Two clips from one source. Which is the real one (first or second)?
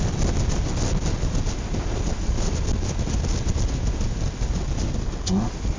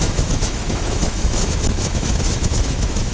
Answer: first